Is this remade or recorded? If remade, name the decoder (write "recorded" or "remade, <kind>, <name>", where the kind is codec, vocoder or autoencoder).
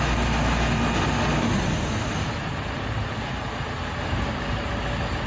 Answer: recorded